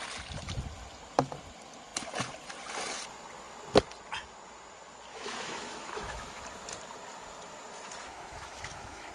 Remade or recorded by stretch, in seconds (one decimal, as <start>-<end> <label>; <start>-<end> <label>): 0.0-5.1 recorded; 5.1-6.4 remade; 6.4-8.0 recorded; 8.0-9.1 remade